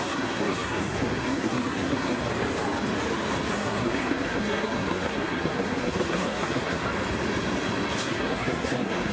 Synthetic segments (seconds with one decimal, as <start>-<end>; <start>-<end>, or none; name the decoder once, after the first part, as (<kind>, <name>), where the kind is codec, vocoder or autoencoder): 0.0-2.3 (codec, SNAC); 3.5-6.8; 8.0-9.1